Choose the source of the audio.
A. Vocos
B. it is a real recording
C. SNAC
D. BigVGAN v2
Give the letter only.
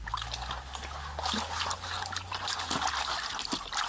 B